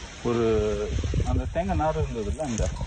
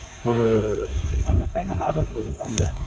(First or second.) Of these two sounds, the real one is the first